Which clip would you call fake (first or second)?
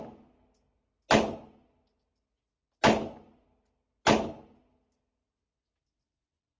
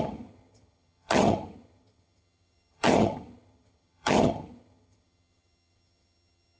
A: second